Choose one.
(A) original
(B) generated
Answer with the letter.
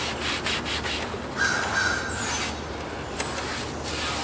A